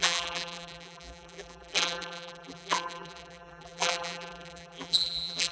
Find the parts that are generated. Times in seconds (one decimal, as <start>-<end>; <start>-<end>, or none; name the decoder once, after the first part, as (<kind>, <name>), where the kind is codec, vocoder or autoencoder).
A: 0.0-5.5 (vocoder, BigVGAN v2)